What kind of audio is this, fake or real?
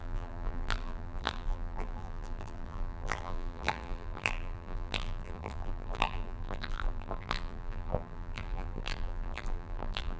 fake